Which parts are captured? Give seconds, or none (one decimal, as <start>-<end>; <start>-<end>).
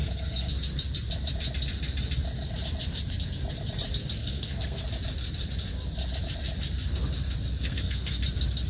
0.5-4.2; 4.8-7.6; 8.1-8.7